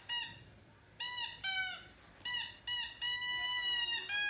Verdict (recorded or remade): recorded